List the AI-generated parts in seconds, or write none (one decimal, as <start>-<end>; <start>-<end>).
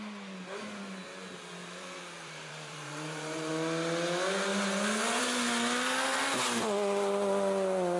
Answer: 1.6-3.5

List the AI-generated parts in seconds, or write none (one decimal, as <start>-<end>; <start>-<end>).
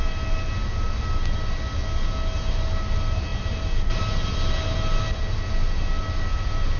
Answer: none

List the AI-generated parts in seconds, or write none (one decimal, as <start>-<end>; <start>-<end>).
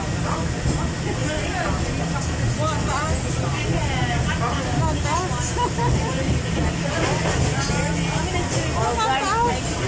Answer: none